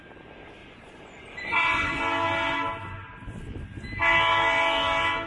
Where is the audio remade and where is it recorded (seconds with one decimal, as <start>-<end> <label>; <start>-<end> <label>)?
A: 0.0-0.6 recorded; 0.6-2.0 remade; 2.0-5.3 recorded